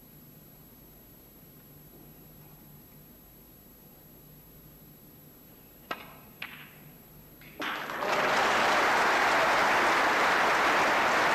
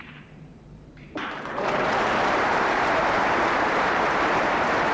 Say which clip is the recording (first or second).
first